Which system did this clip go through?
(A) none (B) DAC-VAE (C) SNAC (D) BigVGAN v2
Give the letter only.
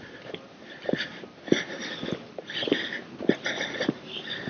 A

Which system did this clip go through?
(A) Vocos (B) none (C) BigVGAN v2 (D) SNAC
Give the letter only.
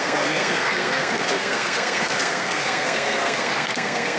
D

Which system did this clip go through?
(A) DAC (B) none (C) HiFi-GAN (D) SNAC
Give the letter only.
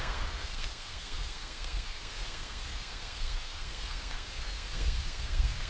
D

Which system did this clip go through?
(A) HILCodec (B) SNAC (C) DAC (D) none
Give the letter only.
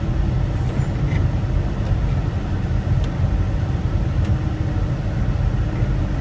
D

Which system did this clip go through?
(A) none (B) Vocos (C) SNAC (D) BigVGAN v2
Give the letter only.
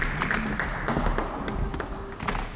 A